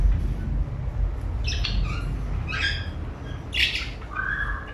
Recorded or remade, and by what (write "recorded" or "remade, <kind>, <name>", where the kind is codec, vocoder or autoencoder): recorded